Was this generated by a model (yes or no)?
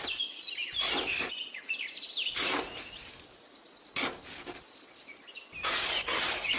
no